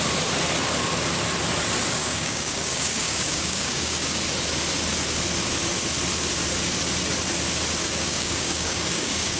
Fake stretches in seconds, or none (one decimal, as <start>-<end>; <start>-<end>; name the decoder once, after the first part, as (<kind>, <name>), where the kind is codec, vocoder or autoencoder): 2.0-4.2 (codec, DAC); 7.8-9.4